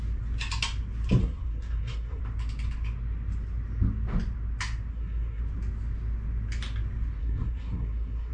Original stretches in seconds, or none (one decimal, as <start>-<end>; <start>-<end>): 0.0-1.2; 2.2-4.9; 5.4-7.2